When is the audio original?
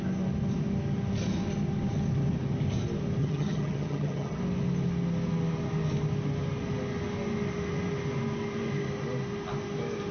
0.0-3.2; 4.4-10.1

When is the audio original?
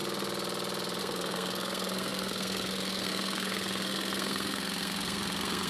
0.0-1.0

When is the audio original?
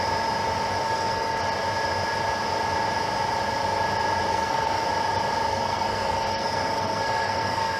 0.0-0.8; 1.4-4.3; 4.9-5.5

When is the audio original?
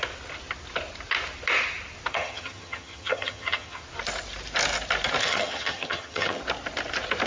0.0-2.1; 3.8-5.2; 6.4-7.3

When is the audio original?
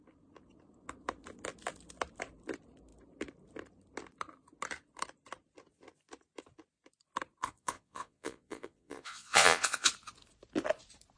0.0-7.4; 9.9-11.2